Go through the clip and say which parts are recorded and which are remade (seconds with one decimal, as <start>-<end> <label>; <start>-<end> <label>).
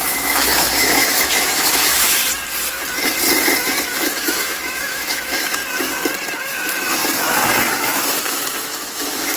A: 0.0-2.2 remade; 2.2-3.8 recorded; 3.8-5.6 remade; 5.6-6.4 recorded; 6.4-7.0 remade; 7.0-7.7 recorded; 7.7-9.4 remade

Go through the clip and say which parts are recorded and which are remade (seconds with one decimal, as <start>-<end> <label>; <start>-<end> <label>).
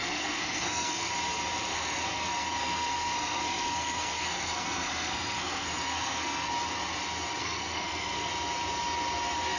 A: 0.0-1.1 remade; 1.1-1.7 recorded; 1.7-6.5 remade; 6.5-7.4 recorded; 7.4-8.3 remade; 8.3-9.6 recorded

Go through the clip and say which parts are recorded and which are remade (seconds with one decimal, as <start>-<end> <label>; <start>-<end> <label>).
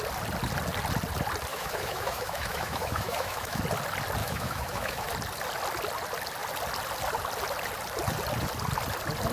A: 0.0-1.5 recorded; 1.5-3.6 remade; 3.6-4.2 recorded; 4.2-5.1 remade; 5.1-9.3 recorded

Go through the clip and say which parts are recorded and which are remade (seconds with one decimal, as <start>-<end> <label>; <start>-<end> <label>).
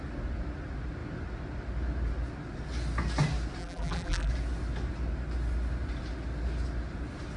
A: 0.0-3.6 recorded; 3.6-4.3 remade; 4.3-7.4 recorded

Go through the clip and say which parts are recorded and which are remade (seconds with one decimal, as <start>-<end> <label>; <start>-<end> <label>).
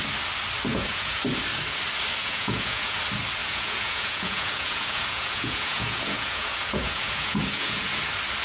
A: 0.0-0.7 recorded; 0.7-1.2 remade; 1.2-2.2 recorded; 2.2-3.0 remade; 3.0-3.4 recorded; 3.4-7.9 remade; 7.9-8.4 recorded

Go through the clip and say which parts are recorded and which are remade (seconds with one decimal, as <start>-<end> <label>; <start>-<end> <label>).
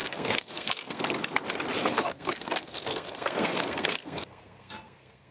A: 0.0-1.0 remade; 1.0-1.8 recorded; 1.8-5.3 remade